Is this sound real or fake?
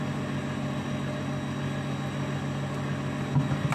real